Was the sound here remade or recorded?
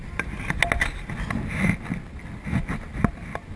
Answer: recorded